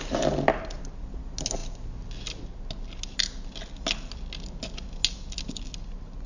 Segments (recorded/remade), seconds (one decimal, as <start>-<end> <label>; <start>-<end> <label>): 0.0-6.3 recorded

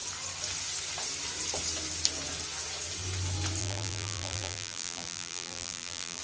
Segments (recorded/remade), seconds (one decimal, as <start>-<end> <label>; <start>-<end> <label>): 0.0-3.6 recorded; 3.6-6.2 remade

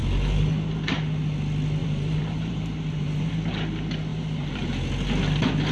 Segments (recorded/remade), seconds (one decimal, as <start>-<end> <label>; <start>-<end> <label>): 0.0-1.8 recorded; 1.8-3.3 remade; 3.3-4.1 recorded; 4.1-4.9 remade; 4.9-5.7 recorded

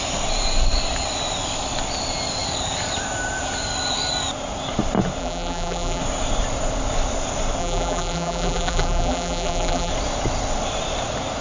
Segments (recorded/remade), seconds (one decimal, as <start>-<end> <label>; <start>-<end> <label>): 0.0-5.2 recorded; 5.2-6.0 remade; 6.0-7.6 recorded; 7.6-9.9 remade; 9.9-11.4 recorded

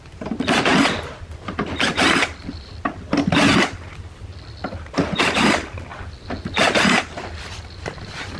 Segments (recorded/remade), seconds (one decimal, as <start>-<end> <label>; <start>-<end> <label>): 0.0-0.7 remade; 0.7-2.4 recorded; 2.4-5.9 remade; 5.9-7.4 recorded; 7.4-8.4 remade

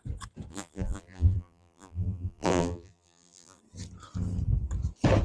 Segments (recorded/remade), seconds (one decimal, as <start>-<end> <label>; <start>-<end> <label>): 0.0-0.5 recorded; 0.5-3.6 remade; 3.6-5.2 recorded